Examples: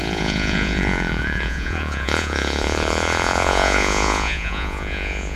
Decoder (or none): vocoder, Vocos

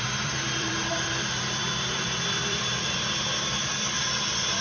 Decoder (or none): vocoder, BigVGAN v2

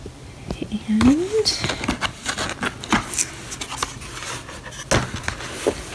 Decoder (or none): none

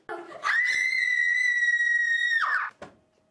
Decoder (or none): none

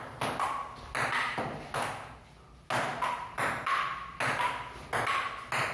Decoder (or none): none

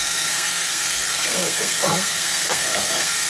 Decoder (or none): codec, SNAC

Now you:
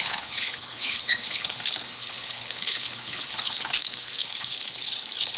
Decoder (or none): codec, HILCodec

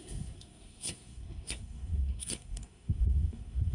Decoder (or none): codec, SNAC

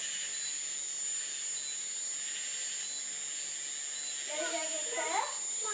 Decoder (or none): none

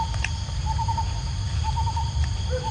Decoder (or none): none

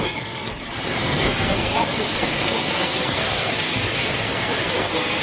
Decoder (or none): codec, SNAC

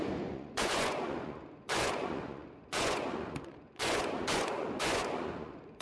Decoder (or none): vocoder, Vocos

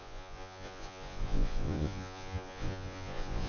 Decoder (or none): vocoder, Vocos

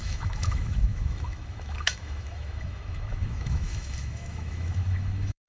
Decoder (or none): autoencoder, DAC-VAE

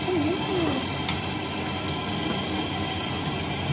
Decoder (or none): none